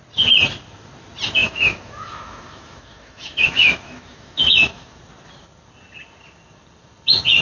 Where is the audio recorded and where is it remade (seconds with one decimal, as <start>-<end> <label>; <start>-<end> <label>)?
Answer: 0.0-1.4 recorded; 1.4-5.0 remade; 5.0-7.4 recorded